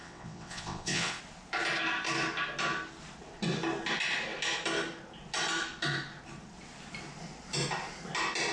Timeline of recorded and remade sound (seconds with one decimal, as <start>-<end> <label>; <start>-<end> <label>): 0.0-1.2 remade; 1.2-8.5 recorded